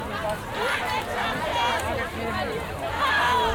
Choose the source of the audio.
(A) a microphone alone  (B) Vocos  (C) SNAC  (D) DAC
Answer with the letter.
A